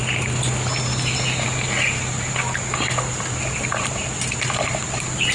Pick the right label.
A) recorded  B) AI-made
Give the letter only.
A